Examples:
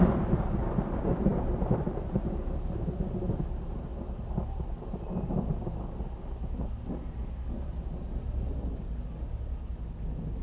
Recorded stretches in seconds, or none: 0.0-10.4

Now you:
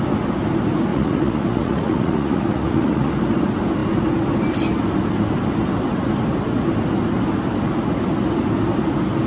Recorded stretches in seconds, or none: 0.0-0.9; 3.1-9.3

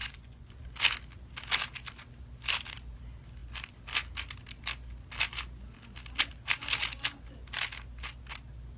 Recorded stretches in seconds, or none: 0.5-8.8